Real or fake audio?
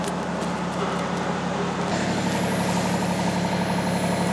real